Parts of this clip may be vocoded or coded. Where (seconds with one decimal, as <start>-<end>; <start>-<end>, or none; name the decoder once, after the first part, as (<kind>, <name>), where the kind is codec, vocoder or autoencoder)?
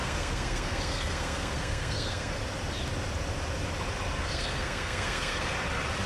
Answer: 0.0-2.4 (codec, SNAC); 4.2-5.5